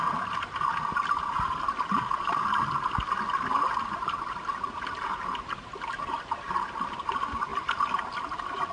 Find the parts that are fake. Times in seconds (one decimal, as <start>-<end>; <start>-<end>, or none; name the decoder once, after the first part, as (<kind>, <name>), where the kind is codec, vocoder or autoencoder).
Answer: 7.5-8.0 (vocoder, BigVGAN v2)